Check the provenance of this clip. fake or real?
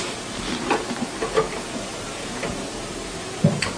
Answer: fake